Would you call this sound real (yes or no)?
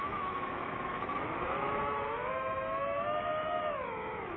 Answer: no